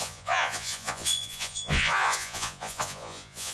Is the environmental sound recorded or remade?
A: remade